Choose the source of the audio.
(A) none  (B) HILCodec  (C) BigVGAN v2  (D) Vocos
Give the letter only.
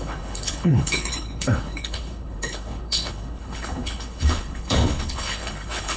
B